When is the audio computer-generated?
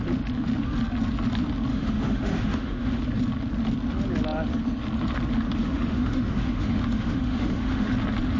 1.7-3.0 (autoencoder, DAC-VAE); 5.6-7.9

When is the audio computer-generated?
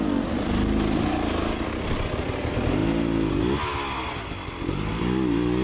none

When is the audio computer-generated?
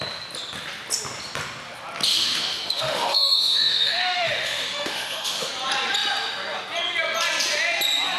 2.1-5.5 (autoencoder, DAC-VAE)